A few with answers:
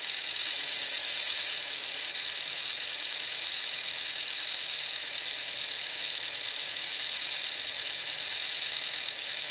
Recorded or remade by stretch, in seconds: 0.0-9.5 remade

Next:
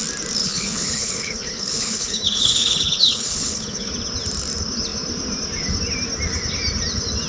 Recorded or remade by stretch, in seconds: 0.0-0.4 recorded; 0.4-3.9 remade; 3.9-7.3 recorded

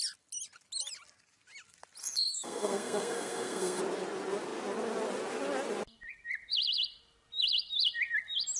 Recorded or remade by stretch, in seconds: 0.0-2.0 recorded; 2.0-3.8 remade; 3.8-8.6 recorded

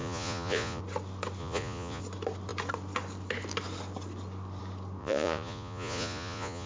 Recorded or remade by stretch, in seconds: 0.0-0.8 remade; 0.8-1.4 recorded; 1.4-2.0 remade; 2.0-5.0 recorded; 5.0-6.7 remade

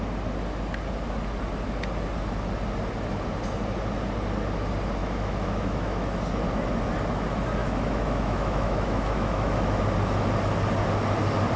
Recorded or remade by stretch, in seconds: 0.0-5.0 recorded; 5.0-6.2 remade; 6.2-7.6 recorded; 7.6-9.8 remade; 9.8-11.6 recorded